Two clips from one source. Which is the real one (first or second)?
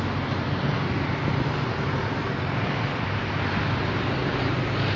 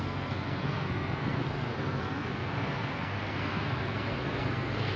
first